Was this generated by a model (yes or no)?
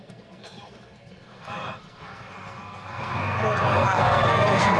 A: yes